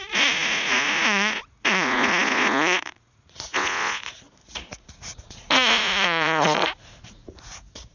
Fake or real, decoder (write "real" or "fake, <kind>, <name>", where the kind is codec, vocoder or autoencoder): fake, vocoder, Vocos